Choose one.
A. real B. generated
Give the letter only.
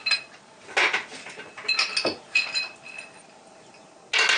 A